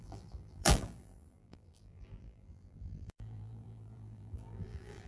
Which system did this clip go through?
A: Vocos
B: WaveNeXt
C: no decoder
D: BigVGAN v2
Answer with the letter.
D